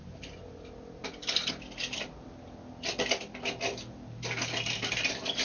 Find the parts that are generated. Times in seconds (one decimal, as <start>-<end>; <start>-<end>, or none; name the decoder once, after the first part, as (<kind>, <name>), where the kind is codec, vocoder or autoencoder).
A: none